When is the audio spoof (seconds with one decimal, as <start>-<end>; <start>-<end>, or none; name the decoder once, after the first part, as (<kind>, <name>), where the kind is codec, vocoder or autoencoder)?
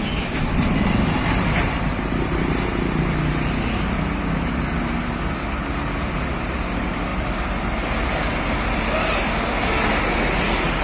none